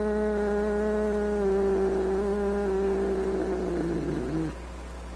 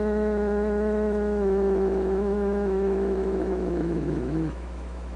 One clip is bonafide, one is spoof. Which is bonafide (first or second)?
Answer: first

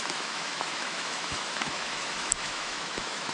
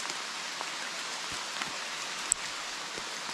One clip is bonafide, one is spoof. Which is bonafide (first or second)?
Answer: second